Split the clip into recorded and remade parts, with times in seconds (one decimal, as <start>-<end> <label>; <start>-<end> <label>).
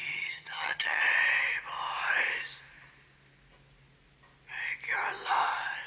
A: 0.0-1.0 remade; 1.0-5.9 recorded